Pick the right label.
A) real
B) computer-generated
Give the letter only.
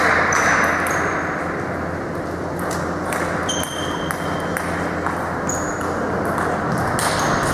A